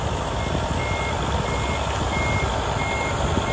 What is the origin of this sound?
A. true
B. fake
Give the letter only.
A